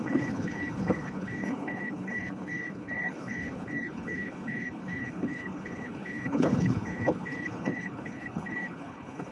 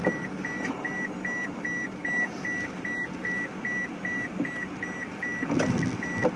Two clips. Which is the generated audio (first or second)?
first